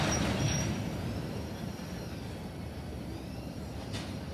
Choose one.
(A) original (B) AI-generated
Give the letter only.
B